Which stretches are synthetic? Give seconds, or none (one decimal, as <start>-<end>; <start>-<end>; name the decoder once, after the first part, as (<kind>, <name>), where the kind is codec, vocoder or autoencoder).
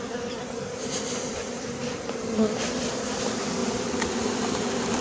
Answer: none